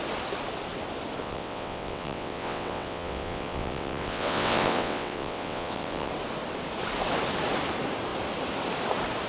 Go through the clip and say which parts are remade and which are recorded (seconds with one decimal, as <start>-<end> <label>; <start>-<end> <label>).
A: 0.0-1.2 recorded; 1.2-6.1 remade; 6.1-9.3 recorded